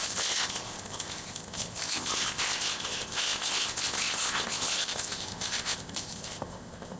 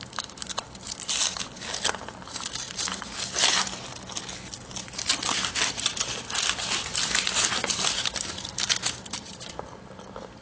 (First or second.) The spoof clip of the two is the first